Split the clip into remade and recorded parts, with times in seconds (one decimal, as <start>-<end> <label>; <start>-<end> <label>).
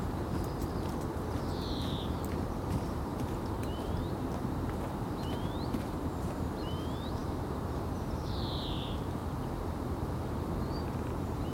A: 0.0-9.2 remade; 9.2-10.9 recorded; 10.9-11.5 remade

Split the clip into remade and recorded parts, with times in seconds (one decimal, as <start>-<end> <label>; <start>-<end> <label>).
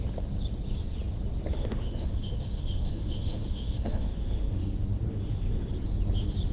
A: 0.0-1.5 recorded; 1.5-4.6 remade; 4.6-5.1 recorded; 5.1-5.7 remade; 5.7-6.5 recorded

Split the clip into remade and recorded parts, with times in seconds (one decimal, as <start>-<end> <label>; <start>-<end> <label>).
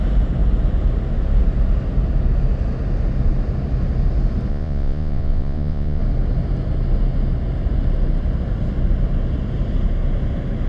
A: 0.0-4.5 recorded; 4.5-6.0 remade; 6.0-10.7 recorded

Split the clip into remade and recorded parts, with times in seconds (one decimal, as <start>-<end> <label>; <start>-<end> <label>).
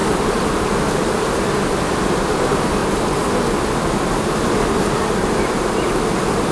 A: 0.0-0.6 remade; 0.6-6.5 recorded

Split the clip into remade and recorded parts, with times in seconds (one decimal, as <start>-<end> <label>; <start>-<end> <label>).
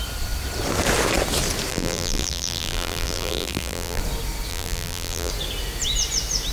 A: 0.0-1.7 recorded; 1.7-4.0 remade; 4.0-4.5 recorded; 4.5-5.3 remade; 5.3-6.5 recorded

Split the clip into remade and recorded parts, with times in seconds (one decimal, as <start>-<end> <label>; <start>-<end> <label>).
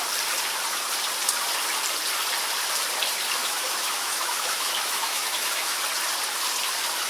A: 0.0-3.4 recorded; 3.4-5.8 remade; 5.8-7.1 recorded